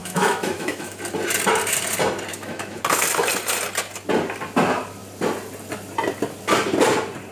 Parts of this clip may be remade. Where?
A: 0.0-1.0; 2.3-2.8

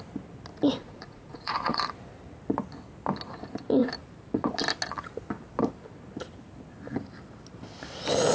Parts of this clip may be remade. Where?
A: 0.8-1.9